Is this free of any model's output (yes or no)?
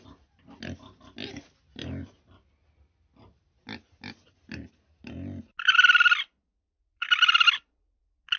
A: yes